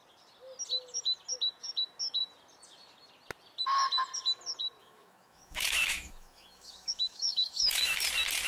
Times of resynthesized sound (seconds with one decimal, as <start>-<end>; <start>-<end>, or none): 4.8-8.0

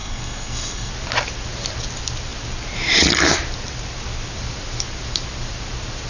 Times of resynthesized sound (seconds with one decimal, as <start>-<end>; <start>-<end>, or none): 0.0-0.9

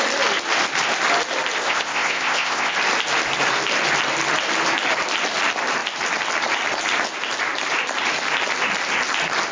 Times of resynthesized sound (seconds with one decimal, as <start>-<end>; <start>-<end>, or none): 1.6-2.7

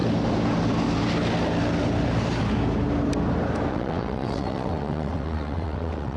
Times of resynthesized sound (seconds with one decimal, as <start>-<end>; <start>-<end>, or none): 3.7-6.2

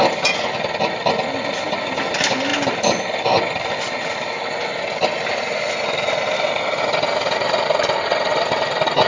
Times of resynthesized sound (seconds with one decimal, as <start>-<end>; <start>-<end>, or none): none

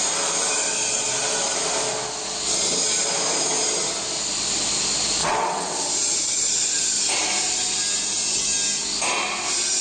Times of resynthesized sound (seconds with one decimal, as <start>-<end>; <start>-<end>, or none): 5.2-5.9